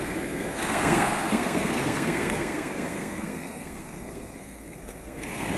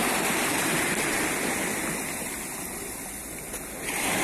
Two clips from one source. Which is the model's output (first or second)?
first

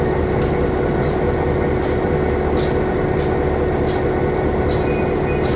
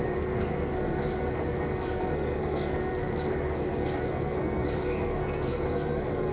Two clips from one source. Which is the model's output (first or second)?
second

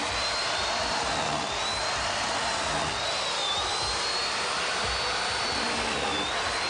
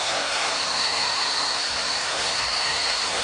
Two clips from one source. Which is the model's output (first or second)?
second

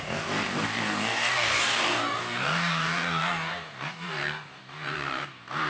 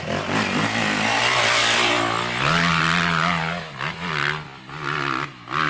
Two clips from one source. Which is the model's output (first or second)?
first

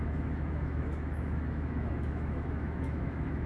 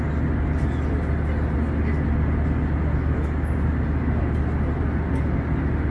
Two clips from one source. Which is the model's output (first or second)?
first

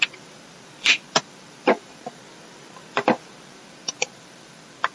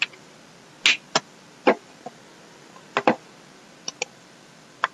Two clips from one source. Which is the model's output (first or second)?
first